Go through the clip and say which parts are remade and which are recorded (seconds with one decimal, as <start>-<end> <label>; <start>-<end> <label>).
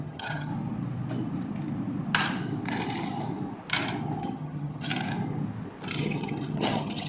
0.0-0.5 remade; 0.5-4.2 recorded; 4.2-4.9 remade; 4.9-6.0 recorded; 6.0-7.1 remade